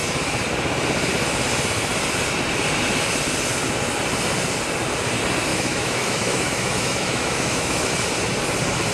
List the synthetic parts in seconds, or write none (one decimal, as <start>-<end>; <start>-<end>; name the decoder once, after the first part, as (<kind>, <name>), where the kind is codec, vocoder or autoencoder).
5.5-7.9 (autoencoder, DAC-VAE)